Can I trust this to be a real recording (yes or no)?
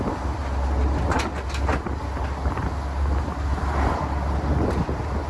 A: yes